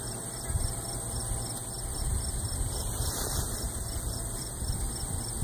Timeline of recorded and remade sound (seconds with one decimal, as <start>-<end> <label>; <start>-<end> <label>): 0.0-1.9 recorded; 1.9-5.4 remade